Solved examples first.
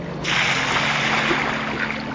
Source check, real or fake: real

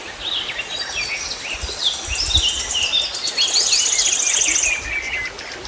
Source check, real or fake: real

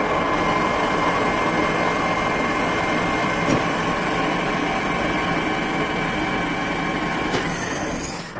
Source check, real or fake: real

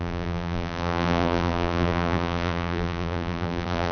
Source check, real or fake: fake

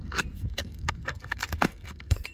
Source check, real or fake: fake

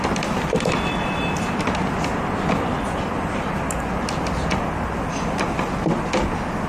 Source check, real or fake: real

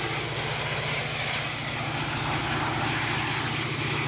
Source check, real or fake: real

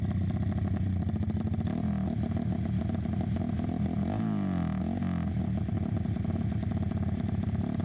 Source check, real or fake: real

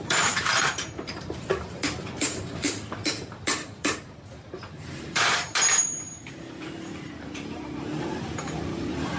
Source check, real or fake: fake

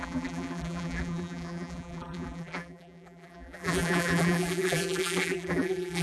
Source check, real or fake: fake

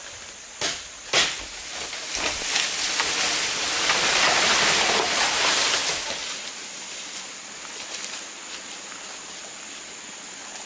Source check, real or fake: real